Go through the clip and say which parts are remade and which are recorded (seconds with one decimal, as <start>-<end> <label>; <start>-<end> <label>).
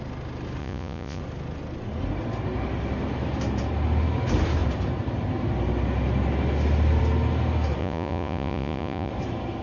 0.0-0.6 recorded; 0.6-1.2 remade; 1.2-7.8 recorded; 7.8-9.1 remade; 9.1-9.6 recorded